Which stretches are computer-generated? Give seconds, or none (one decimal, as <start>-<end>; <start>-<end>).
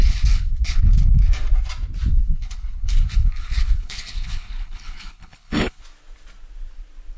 0.0-1.3; 2.1-5.8